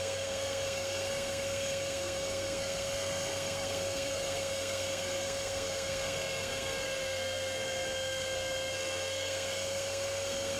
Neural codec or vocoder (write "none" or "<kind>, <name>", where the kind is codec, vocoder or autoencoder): codec, SNAC